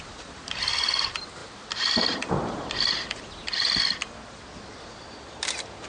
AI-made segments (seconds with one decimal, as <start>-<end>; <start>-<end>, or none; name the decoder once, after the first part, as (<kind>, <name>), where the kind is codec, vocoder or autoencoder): none